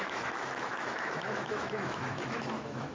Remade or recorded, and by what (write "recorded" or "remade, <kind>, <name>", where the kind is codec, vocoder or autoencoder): remade, autoencoder, DAC-VAE